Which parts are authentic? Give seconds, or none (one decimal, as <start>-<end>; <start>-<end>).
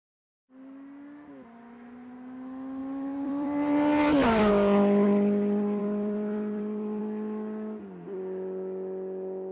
0.0-2.8; 4.5-5.8; 7.0-9.5